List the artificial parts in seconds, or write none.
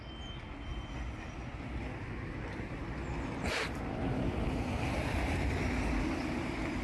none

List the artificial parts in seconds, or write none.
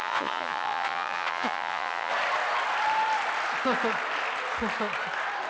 0.0-2.1 (vocoder, Vocos)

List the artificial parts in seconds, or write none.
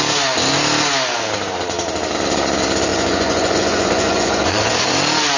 2.9-4.7 (vocoder, Vocos)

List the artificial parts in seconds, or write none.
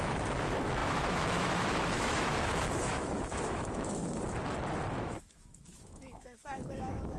0.0-4.0 (autoencoder, DAC-VAE); 4.9-7.2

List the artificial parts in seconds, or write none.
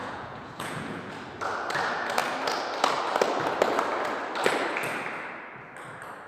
0.0-1.1 (vocoder, Vocos)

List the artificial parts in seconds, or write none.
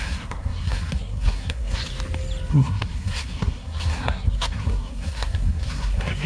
0.0-1.8 (codec, SNAC); 2.5-6.3